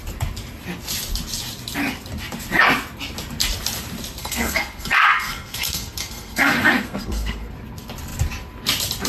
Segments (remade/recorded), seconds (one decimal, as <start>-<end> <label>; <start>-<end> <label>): 0.0-4.2 recorded; 4.2-7.5 remade; 7.5-9.1 recorded